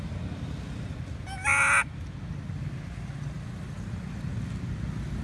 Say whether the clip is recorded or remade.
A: recorded